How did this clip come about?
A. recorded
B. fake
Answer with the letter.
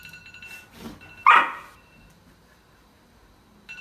A